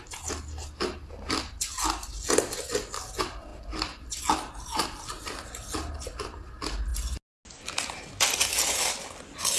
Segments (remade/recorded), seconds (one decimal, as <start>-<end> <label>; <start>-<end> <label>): 0.0-9.6 recorded